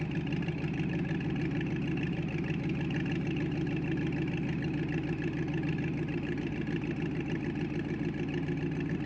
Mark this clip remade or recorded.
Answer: recorded